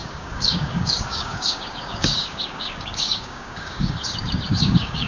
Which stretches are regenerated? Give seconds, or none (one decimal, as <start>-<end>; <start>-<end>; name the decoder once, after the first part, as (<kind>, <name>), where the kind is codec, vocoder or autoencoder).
0.0-5.1 (codec, DAC)